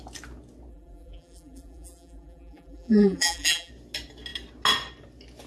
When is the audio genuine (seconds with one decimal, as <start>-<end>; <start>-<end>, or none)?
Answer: 0.0-0.7; 3.7-5.5